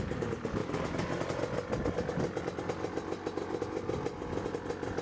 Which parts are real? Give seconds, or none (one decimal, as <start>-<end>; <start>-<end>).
0.0-5.0